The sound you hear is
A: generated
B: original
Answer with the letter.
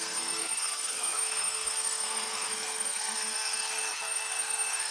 A